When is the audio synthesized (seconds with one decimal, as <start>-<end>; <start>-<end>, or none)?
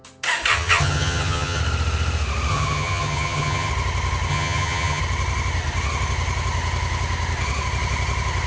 0.5-1.6; 2.5-3.7; 4.3-5.0